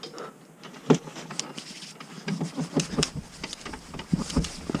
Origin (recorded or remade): recorded